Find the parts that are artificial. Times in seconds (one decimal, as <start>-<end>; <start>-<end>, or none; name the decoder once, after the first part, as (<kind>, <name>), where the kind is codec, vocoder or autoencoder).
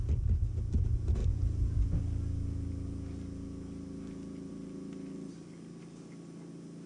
none